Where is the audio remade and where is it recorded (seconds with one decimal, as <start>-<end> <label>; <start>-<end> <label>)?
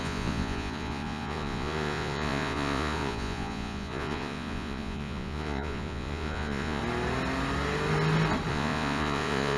0.0-6.8 remade; 6.8-8.5 recorded; 8.5-9.6 remade